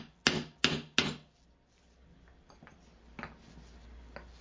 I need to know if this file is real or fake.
real